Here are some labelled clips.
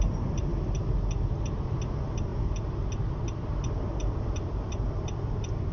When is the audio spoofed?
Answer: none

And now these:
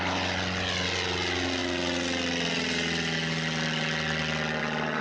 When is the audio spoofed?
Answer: none

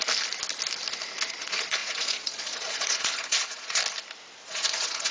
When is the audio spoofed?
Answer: 1.3-3.8 (vocoder, Vocos); 4.4-5.1